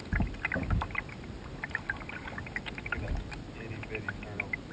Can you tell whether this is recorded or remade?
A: recorded